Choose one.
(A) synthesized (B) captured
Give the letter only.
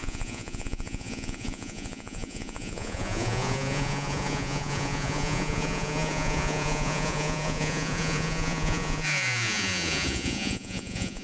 A